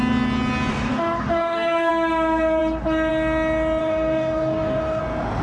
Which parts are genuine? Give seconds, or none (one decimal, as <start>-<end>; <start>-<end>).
0.0-0.7; 1.9-3.8; 5.0-5.4